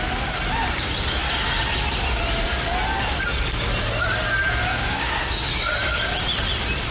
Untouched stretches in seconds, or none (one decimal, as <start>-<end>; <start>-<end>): 0.0-4.7; 6.1-6.9